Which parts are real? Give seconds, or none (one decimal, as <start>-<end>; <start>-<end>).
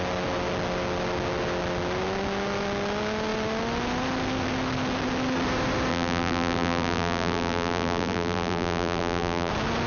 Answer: 0.0-5.9; 9.5-9.9